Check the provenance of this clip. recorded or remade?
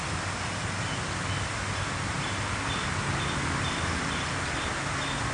recorded